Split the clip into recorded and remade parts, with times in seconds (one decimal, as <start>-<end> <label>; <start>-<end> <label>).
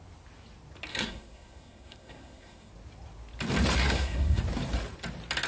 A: 0.0-0.9 recorded; 0.9-2.7 remade; 2.7-3.8 recorded; 3.8-4.4 remade; 4.4-5.5 recorded